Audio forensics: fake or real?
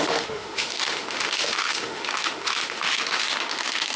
fake